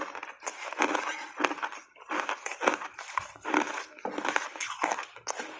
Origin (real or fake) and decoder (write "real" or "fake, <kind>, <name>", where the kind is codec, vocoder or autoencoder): real